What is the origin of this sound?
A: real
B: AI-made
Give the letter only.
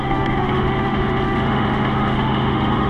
B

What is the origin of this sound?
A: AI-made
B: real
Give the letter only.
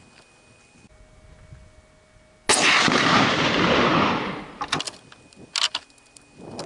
B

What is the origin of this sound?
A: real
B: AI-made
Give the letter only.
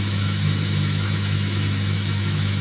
B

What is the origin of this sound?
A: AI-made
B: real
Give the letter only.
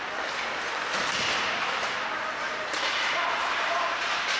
A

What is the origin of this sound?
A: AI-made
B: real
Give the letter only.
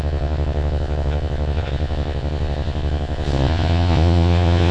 A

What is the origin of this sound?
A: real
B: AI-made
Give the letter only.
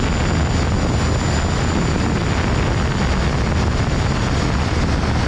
A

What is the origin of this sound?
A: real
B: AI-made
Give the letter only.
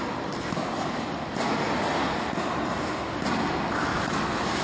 A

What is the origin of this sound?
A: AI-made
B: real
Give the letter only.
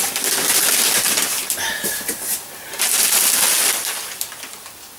B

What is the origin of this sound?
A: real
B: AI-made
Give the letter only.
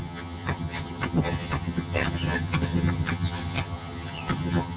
B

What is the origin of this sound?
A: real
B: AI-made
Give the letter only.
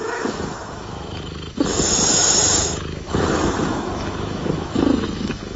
B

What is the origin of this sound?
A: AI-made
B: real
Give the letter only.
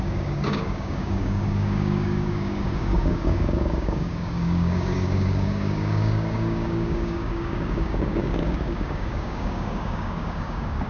A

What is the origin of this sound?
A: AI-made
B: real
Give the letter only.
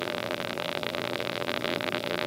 A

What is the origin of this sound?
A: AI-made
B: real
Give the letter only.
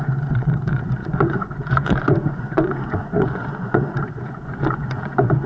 A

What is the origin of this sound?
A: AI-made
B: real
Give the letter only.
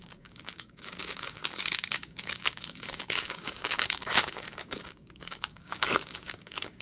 A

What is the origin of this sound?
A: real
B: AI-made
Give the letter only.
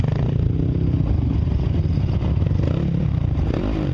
A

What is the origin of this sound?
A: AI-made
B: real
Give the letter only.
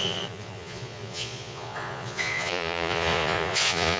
A